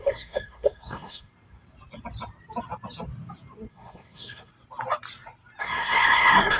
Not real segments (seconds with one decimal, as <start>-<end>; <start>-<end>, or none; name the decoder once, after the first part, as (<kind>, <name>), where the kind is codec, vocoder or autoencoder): 0.0-1.3 (codec, SNAC); 3.7-4.5; 5.6-6.6